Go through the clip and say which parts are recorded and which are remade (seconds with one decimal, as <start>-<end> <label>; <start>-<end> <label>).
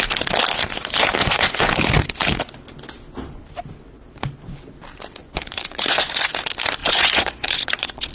0.0-1.2 recorded; 1.2-1.7 remade; 1.7-5.2 recorded; 5.2-6.3 remade; 6.3-6.8 recorded; 6.8-8.1 remade